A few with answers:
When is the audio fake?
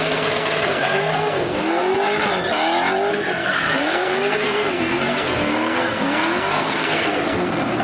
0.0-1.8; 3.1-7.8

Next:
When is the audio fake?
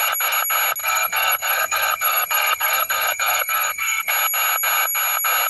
0.8-4.1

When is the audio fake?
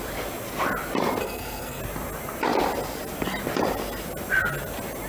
1.2-1.8